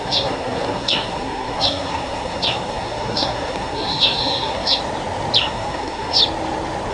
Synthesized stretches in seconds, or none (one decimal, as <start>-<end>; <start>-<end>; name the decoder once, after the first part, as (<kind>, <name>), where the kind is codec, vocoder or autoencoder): 0.0-4.8 (codec, SNAC); 5.4-6.2